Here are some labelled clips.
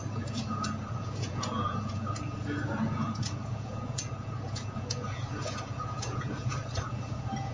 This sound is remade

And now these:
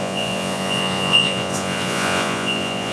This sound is remade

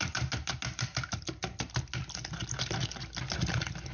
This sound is recorded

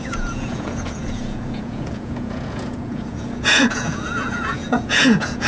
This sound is remade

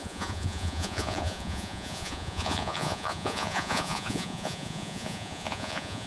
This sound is remade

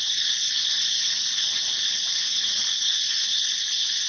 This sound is recorded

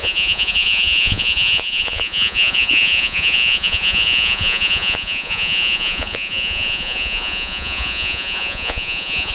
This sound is remade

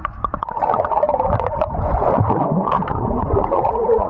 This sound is remade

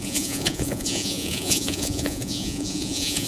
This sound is remade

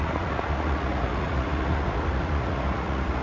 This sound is remade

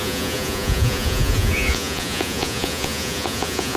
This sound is remade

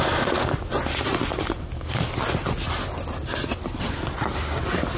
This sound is recorded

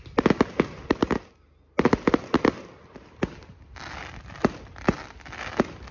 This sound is recorded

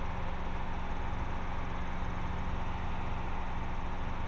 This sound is recorded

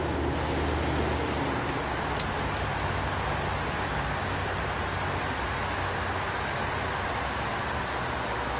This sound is recorded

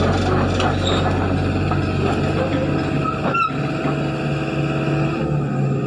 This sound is recorded